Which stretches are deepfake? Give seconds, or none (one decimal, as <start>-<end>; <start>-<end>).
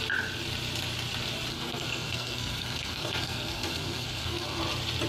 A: 1.5-4.6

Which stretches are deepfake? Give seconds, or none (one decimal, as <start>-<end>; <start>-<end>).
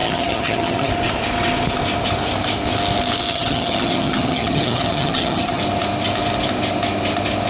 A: 0.0-0.9; 3.3-5.6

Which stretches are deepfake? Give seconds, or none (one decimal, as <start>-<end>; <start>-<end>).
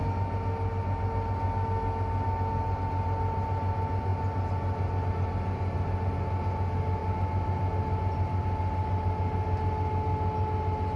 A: none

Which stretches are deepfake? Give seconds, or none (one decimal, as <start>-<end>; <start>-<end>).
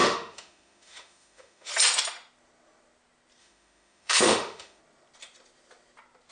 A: 0.0-1.7; 3.4-4.8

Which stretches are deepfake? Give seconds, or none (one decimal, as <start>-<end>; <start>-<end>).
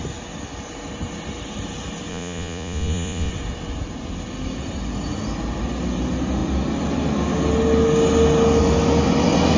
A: 2.1-3.3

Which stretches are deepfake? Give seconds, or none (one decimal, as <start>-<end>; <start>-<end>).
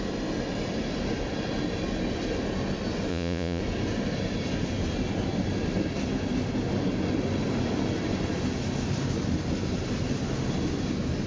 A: 3.1-3.6